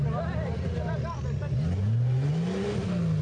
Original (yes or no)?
yes